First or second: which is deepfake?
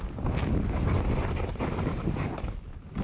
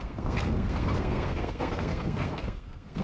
second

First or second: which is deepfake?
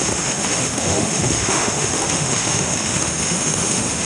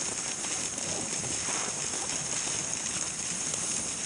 first